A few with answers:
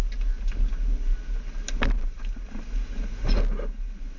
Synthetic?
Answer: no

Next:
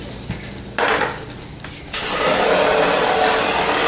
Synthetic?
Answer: no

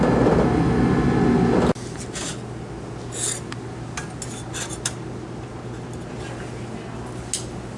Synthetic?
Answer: no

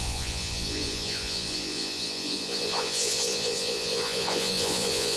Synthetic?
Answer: yes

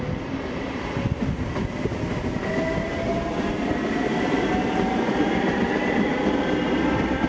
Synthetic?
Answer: yes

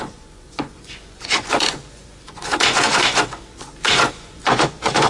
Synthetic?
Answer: yes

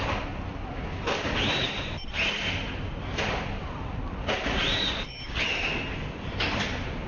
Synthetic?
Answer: no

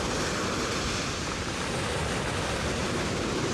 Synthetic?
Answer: no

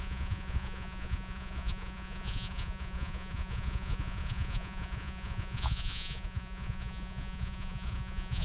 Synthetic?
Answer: yes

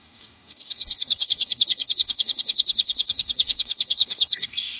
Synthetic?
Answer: yes